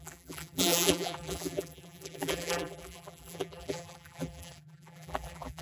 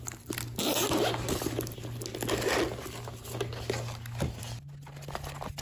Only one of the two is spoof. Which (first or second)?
first